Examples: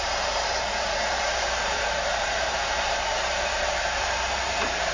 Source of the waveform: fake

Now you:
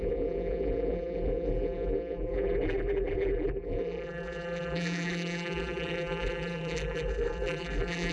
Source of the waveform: fake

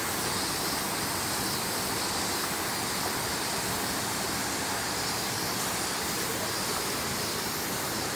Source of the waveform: real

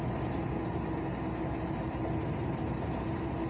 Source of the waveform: real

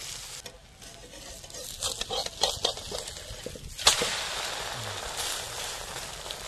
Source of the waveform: real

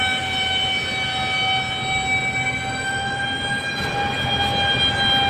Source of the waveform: real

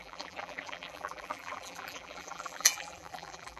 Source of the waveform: fake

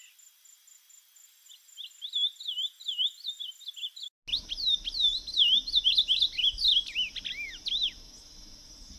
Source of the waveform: real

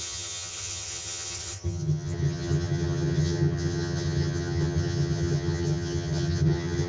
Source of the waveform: fake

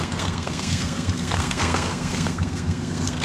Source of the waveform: fake